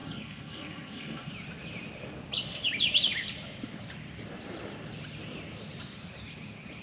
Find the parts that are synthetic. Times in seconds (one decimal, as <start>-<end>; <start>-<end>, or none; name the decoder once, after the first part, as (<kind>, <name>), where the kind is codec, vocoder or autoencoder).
0.0-1.3 (codec, SNAC)